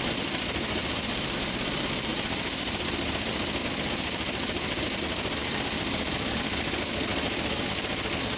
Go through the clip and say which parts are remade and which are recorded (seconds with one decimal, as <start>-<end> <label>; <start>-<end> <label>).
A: 0.0-2.1 remade; 2.1-2.8 recorded; 2.8-3.6 remade; 3.6-5.0 recorded; 5.0-7.1 remade; 7.1-7.7 recorded; 7.7-8.4 remade